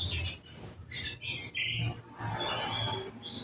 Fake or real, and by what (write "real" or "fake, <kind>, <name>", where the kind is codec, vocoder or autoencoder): real